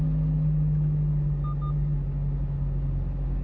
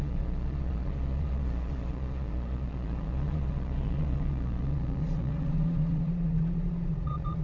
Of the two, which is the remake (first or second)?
second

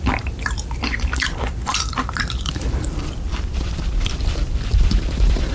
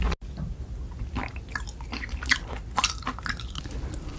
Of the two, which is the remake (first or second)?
first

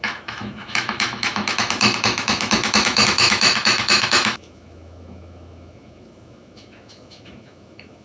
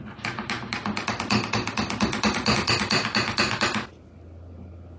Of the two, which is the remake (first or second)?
first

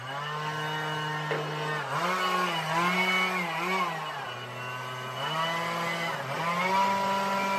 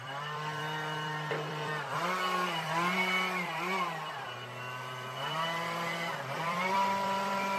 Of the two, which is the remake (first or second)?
second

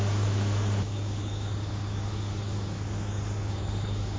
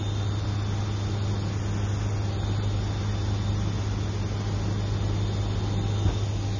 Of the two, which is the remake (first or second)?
first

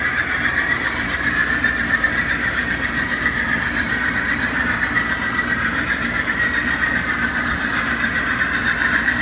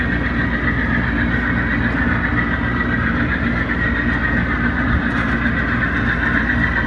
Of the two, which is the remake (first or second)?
first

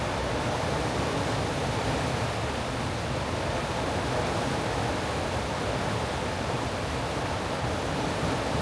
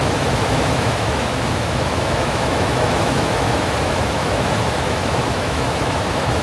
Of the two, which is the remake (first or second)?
second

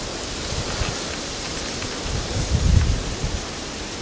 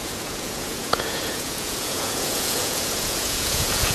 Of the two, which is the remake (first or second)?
second